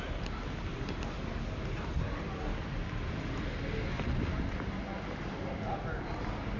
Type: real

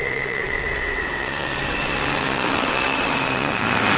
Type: fake